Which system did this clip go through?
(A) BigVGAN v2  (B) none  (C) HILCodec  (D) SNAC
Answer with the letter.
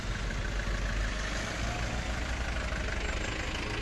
B